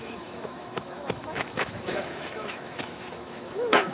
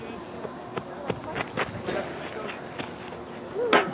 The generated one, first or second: first